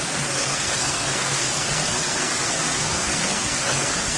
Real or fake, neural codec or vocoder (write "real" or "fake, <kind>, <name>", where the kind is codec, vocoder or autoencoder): fake, codec, SNAC